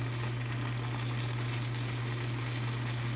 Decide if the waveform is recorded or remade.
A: recorded